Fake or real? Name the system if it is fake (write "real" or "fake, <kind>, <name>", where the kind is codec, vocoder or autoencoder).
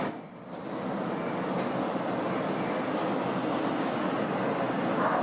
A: real